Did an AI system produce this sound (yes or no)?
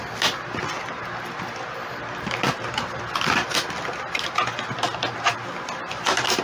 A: no